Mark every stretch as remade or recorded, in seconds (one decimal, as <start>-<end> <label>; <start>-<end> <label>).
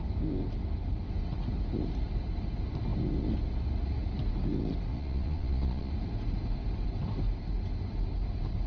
0.0-4.9 recorded; 4.9-5.9 remade; 5.9-8.7 recorded